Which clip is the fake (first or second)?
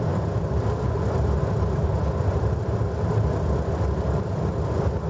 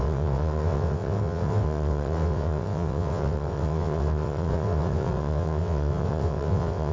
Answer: second